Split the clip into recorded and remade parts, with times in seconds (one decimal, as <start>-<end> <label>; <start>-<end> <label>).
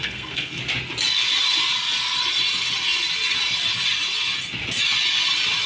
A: 0.0-0.6 remade; 0.6-5.7 recorded